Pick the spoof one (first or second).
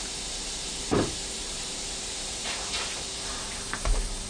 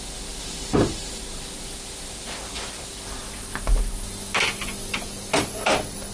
first